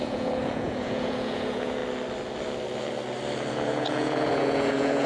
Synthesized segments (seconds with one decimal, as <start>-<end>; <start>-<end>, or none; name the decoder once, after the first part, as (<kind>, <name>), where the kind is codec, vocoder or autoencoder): 0.0-1.8 (vocoder, Vocos); 3.5-5.1